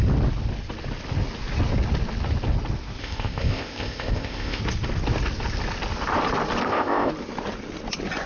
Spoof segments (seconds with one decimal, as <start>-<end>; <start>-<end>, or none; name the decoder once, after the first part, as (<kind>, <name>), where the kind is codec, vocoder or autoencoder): 3.0-4.6 (codec, ZipCodec); 6.6-7.1